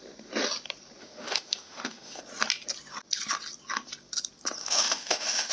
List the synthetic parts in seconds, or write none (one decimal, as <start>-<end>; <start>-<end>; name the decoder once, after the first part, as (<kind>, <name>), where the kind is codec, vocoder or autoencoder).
1.0-2.2 (autoencoder, DAC-VAE); 4.6-5.5